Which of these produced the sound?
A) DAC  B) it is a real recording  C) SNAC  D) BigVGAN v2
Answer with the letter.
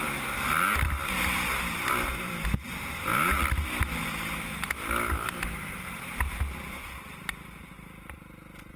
B